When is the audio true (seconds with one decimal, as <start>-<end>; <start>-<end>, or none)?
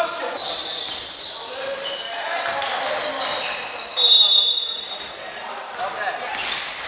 0.0-6.9